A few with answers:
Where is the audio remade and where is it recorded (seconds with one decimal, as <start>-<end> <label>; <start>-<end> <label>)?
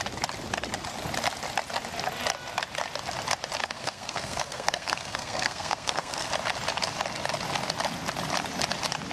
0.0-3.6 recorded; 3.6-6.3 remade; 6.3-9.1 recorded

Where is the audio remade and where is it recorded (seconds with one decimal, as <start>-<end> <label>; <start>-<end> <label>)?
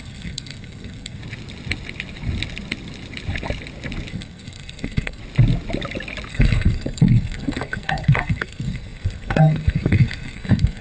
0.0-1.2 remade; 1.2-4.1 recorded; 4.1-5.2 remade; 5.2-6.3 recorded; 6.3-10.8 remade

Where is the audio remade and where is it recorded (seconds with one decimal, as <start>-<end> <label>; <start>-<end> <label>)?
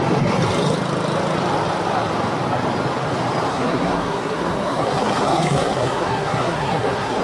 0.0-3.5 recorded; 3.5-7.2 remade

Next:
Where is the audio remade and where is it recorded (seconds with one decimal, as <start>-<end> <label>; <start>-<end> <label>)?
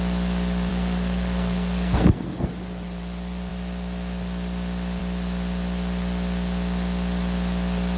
0.0-0.7 recorded; 0.7-2.5 remade; 2.5-8.0 recorded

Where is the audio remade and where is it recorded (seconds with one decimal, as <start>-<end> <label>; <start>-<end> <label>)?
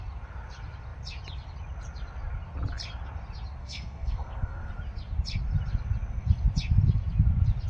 0.0-3.6 recorded; 3.6-4.7 remade; 4.7-7.7 recorded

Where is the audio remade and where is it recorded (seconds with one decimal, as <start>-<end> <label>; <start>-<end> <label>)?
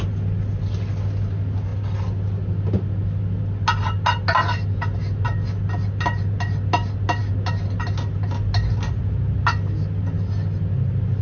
0.0-11.2 recorded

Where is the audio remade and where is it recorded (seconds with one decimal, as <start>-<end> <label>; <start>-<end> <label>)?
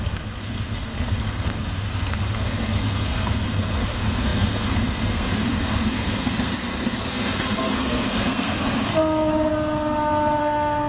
0.0-9.3 remade; 9.3-10.4 recorded; 10.4-10.9 remade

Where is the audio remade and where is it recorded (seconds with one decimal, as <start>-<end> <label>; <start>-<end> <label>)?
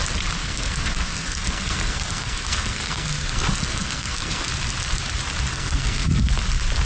0.0-0.4 recorded; 0.4-4.5 remade; 4.5-5.5 recorded; 5.5-6.3 remade; 6.3-6.8 recorded